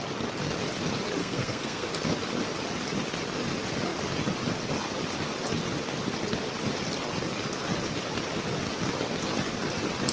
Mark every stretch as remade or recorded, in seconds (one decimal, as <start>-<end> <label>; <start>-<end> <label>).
0.0-1.2 recorded; 1.2-1.9 remade; 1.9-10.1 recorded